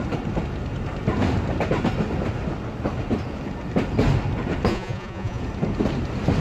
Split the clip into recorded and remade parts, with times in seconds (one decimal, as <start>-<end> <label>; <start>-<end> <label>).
0.0-4.7 recorded; 4.7-5.4 remade; 5.4-6.4 recorded